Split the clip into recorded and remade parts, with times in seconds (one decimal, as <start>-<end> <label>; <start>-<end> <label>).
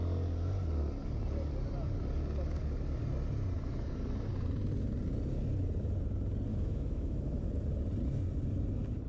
0.0-6.5 recorded; 6.5-7.5 remade; 7.5-9.1 recorded